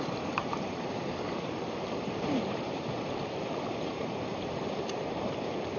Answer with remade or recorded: remade